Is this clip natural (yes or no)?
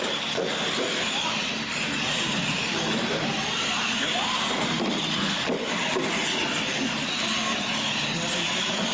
yes